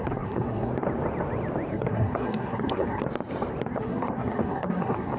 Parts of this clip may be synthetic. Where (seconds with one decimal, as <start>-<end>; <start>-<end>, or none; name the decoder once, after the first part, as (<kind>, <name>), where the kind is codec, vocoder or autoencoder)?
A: 0.0-0.7 (codec, SNAC); 1.7-3.0; 3.7-5.2